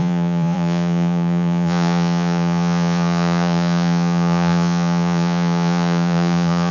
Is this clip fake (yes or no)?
yes